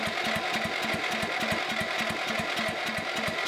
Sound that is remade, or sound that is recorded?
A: recorded